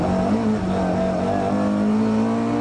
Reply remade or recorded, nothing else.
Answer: recorded